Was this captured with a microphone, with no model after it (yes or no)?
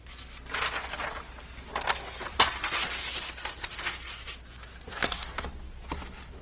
yes